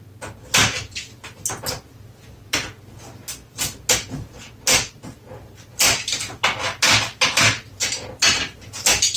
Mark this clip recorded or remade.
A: recorded